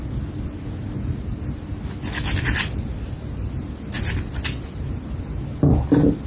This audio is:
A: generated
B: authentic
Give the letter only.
B